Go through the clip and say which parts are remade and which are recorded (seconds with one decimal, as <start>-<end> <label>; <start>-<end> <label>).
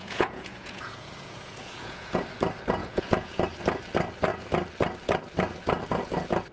0.0-2.2 remade; 2.2-2.8 recorded; 2.8-3.4 remade; 3.4-6.5 recorded